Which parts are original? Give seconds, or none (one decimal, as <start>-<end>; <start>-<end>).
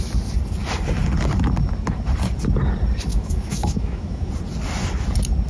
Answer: 0.0-3.1; 4.3-5.5